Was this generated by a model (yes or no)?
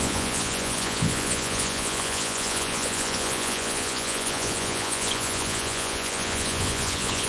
yes